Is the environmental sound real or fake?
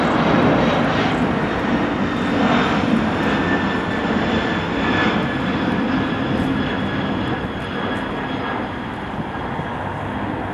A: real